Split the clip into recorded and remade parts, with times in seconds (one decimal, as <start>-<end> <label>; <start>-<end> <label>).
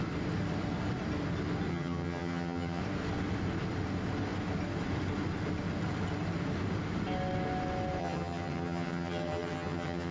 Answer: 0.0-1.7 recorded; 1.7-2.8 remade; 2.8-8.0 recorded; 8.0-10.1 remade